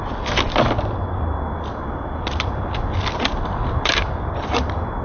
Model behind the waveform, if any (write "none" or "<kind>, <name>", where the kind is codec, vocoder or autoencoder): vocoder, BigVGAN v2